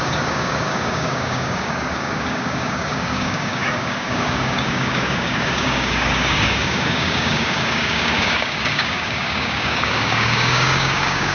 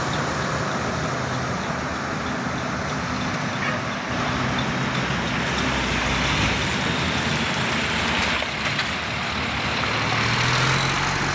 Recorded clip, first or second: second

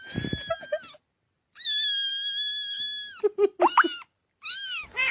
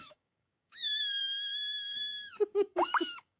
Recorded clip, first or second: first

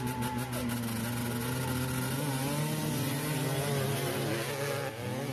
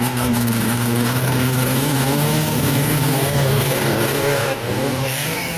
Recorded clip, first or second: first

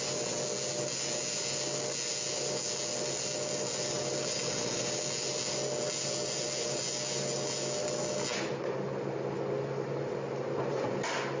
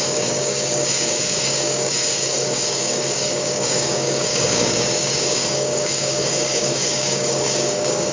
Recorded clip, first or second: first